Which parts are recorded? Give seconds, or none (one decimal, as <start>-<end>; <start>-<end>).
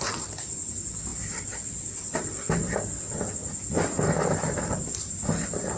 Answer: 0.0-5.8